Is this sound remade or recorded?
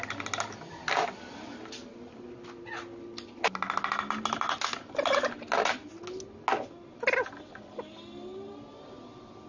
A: recorded